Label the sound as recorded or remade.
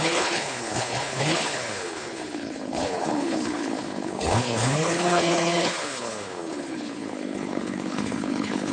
remade